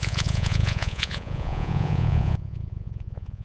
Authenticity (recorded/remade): remade